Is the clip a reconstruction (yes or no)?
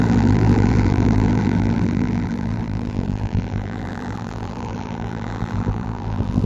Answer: yes